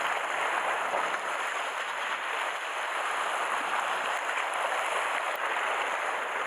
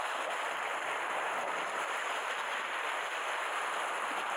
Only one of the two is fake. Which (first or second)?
first